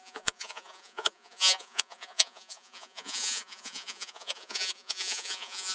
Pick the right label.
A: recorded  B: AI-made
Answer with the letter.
B